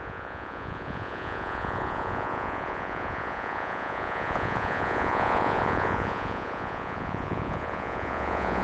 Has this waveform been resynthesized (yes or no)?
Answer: yes